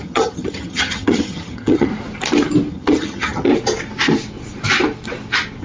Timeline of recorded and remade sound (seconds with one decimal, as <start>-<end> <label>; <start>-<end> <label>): 0.0-1.9 remade; 1.9-2.7 recorded; 2.7-3.5 remade; 3.5-5.6 recorded